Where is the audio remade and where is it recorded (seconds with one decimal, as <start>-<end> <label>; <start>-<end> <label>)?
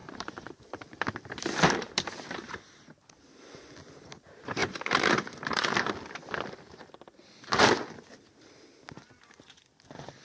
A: 0.0-2.5 remade; 2.5-4.6 recorded; 4.6-5.9 remade; 5.9-10.2 recorded